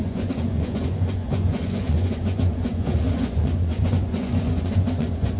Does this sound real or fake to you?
fake